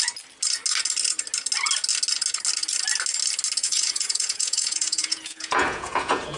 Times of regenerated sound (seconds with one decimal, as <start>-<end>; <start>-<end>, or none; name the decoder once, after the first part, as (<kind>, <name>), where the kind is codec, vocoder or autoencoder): 3.6-6.4 (vocoder, Vocos)